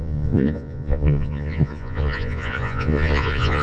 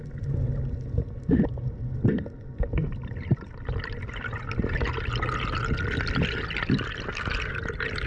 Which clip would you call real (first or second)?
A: second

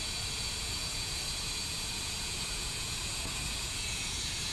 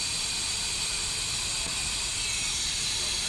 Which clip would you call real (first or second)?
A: second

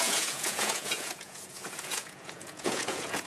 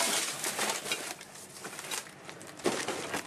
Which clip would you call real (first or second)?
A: second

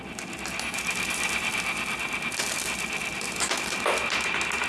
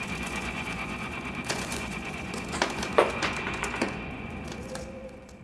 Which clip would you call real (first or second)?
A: first